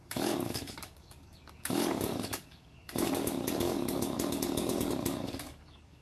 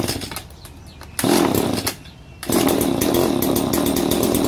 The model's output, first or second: first